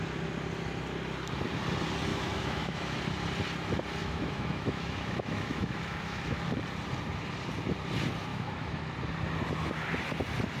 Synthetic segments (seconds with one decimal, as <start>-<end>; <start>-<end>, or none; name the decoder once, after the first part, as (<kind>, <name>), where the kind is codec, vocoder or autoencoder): 2.1-3.0 (autoencoder, DAC-VAE); 4.0-6.4; 8.3-8.8